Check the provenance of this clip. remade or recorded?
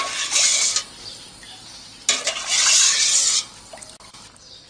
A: recorded